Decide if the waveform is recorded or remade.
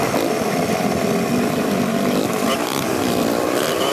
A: remade